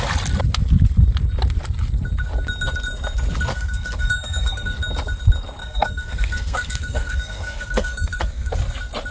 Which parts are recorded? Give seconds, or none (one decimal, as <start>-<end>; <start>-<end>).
0.0-3.5; 4.8-5.6; 8.5-9.1